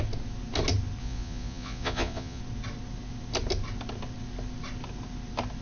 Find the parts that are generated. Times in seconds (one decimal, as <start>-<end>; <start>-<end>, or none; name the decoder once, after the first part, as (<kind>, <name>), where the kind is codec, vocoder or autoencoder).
1.0-2.4 (vocoder, Vocos)